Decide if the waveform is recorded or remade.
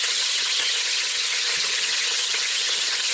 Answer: remade